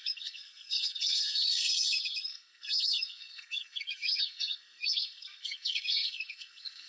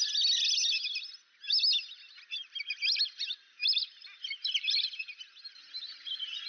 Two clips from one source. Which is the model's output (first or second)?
first